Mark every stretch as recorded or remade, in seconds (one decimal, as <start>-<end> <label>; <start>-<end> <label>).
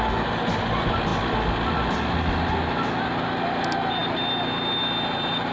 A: 0.0-5.5 recorded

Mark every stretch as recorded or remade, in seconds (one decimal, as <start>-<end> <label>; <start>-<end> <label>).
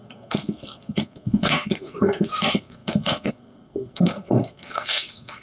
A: 0.0-5.4 remade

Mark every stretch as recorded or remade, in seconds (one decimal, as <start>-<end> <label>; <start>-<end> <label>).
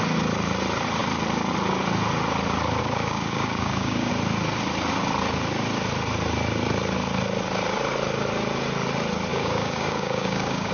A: 0.0-2.8 recorded; 2.8-4.1 remade; 4.1-9.3 recorded; 9.3-10.7 remade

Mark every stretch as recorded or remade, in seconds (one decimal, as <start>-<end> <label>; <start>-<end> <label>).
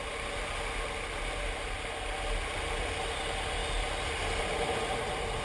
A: 0.0-5.4 recorded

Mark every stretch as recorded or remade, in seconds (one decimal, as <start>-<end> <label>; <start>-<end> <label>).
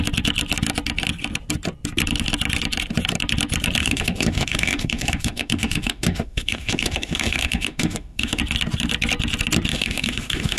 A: 0.0-3.8 recorded; 3.8-8.4 remade; 8.4-9.7 recorded; 9.7-10.6 remade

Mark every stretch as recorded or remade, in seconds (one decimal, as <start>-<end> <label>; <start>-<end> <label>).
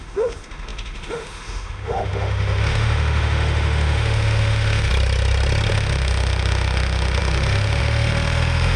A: 0.0-4.9 remade; 4.9-5.7 recorded; 5.7-8.8 remade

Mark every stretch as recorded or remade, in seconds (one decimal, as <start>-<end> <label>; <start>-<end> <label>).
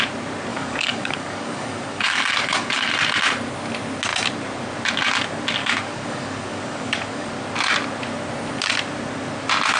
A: 0.0-0.5 recorded; 0.5-2.9 remade; 2.9-5.6 recorded; 5.6-7.3 remade; 7.3-9.8 recorded